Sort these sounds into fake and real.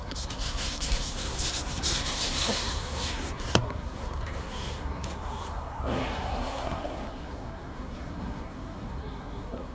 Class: fake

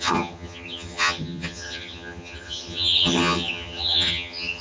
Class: fake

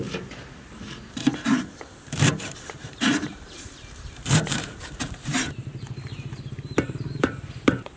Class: fake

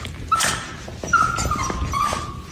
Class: real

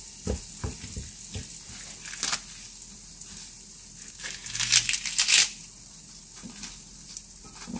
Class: real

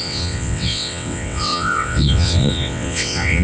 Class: fake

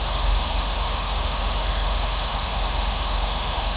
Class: fake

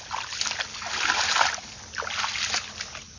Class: real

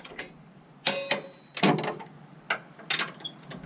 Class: real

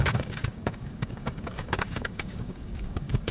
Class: fake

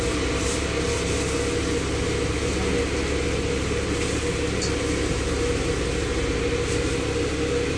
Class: real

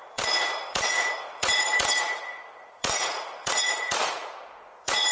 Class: fake